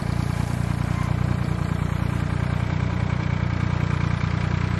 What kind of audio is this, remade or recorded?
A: remade